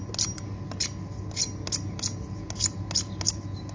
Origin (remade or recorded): recorded